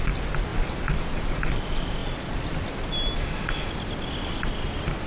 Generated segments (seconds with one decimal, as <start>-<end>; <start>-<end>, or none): 3.2-3.7